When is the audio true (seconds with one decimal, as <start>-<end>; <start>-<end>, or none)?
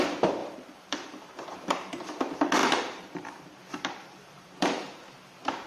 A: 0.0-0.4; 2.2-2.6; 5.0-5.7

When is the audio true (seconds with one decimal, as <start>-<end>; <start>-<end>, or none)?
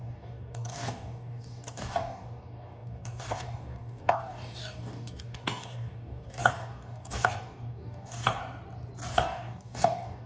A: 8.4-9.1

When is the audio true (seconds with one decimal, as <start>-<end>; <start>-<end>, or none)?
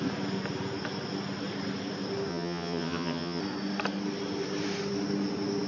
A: 0.0-2.3; 3.4-5.7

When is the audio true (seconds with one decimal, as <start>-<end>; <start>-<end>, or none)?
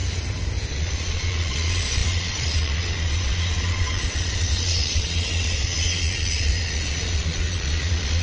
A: 0.0-0.7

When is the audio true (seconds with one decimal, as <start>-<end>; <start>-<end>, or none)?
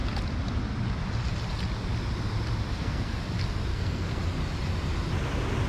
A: 0.0-2.7; 3.2-3.7; 4.2-5.7